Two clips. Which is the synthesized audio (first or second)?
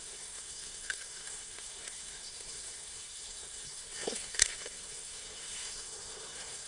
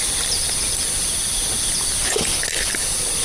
first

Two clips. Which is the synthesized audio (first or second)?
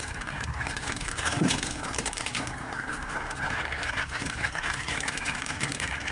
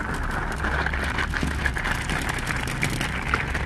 first